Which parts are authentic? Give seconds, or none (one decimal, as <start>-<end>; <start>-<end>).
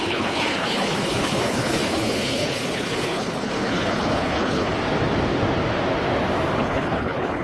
4.7-6.6